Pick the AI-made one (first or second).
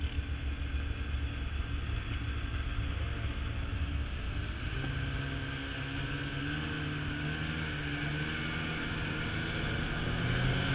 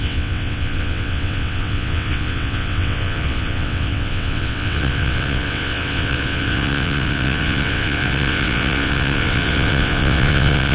second